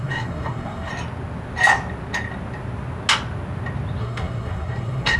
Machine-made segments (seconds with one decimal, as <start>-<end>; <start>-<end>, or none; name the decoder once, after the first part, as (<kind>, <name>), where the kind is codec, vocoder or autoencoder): 0.0-0.9 (codec, SNAC); 4.0-5.2